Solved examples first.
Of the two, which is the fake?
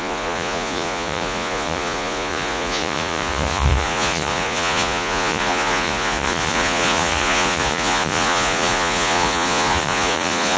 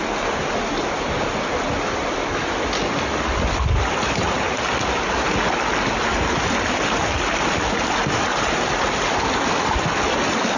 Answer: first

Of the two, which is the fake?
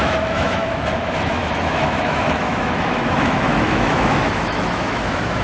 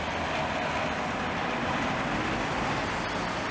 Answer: first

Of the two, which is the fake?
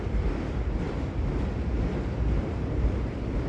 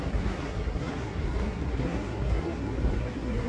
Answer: second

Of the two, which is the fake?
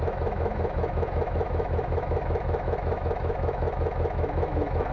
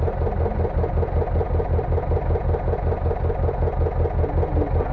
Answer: first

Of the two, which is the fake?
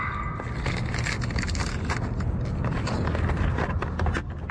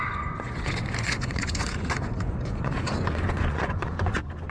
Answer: second